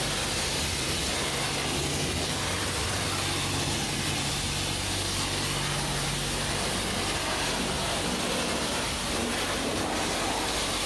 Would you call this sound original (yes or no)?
yes